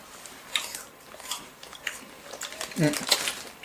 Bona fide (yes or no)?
yes